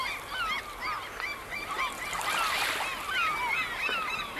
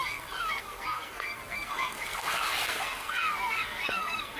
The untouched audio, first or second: first